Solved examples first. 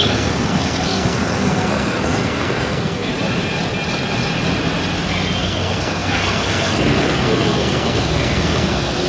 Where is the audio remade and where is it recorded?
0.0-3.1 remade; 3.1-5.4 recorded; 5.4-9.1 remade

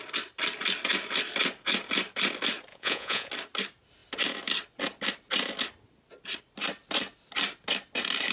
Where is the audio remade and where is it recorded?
0.0-2.7 recorded; 2.7-3.3 remade; 3.3-8.3 recorded

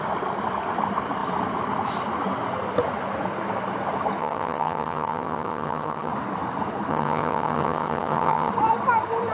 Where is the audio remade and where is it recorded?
0.0-4.2 recorded; 4.2-6.1 remade; 6.1-6.9 recorded; 6.9-8.5 remade; 8.5-9.3 recorded

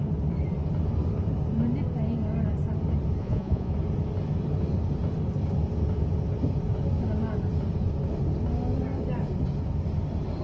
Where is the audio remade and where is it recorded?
0.0-3.2 recorded; 3.2-3.7 remade; 3.7-10.4 recorded

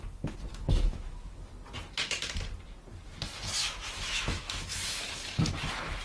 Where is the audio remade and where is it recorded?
0.0-0.5 recorded; 0.5-1.5 remade; 1.5-3.6 recorded; 3.6-5.5 remade; 5.5-6.0 recorded

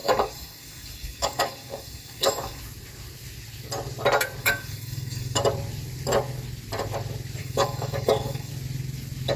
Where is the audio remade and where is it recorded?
0.0-2.6 remade; 2.6-4.4 recorded; 4.4-5.4 remade; 5.4-7.4 recorded; 7.4-8.5 remade; 8.5-9.4 recorded

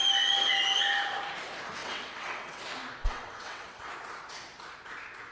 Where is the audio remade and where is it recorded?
0.0-1.8 recorded; 1.8-2.6 remade; 2.6-3.0 recorded; 3.0-3.9 remade; 3.9-5.3 recorded